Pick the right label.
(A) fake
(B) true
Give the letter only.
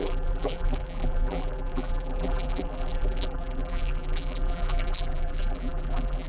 A